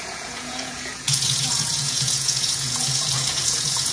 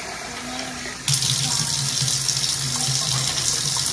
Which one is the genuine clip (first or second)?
second